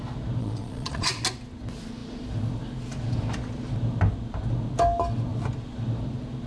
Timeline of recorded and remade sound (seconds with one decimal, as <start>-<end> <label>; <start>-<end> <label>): 0.0-0.4 recorded; 0.4-1.1 remade; 1.1-6.5 recorded